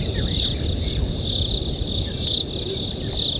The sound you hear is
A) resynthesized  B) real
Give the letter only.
B